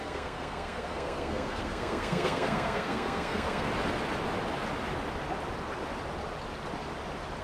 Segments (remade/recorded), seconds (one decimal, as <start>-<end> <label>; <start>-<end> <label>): 0.0-3.7 remade; 3.7-7.4 recorded